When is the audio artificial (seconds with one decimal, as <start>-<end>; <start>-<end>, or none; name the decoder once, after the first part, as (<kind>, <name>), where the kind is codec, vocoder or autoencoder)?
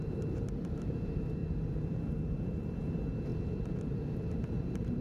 0.0-3.3 (vocoder, BigVGAN v2); 3.9-5.0